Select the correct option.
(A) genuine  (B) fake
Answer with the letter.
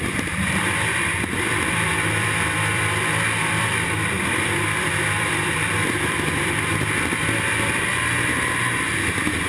B